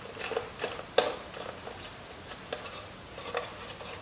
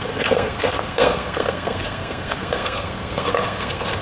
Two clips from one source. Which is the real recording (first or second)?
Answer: first